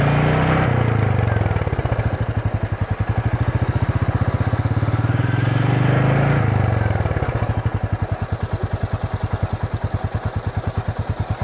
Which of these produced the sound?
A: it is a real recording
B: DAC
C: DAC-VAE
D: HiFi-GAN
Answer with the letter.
A